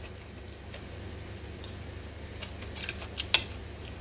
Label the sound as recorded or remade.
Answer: recorded